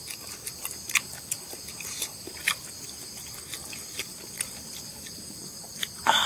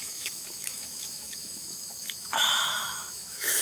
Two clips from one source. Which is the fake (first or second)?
second